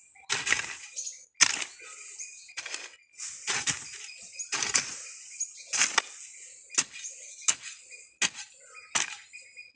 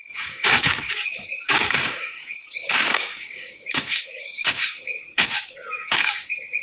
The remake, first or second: second